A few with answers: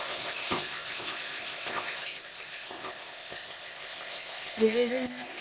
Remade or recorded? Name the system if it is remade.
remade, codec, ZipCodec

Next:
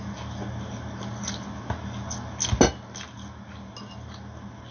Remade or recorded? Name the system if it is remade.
recorded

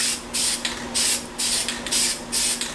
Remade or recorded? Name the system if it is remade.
recorded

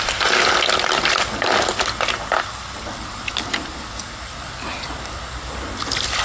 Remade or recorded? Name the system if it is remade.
recorded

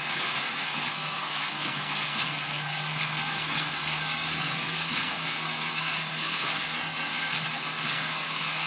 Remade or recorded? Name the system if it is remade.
remade, codec, SNAC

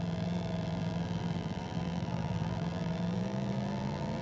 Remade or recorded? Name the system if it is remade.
remade, vocoder, BigVGAN v2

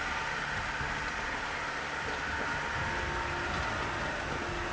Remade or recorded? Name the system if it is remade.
recorded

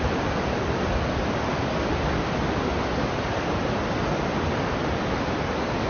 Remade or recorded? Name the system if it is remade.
recorded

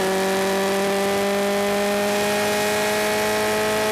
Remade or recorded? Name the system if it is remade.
recorded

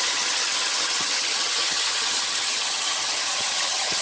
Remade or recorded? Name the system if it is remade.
remade, vocoder, HiFi-GAN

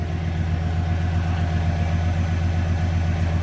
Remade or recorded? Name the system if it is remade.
recorded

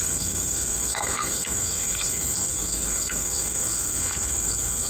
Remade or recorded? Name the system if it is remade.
remade, codec, SNAC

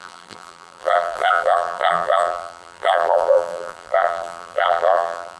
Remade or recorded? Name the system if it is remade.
remade, vocoder, BigVGAN v2